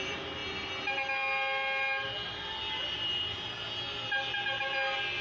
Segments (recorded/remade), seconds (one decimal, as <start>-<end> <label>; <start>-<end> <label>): 0.0-0.4 remade; 0.4-2.7 recorded; 2.7-3.6 remade; 3.6-5.2 recorded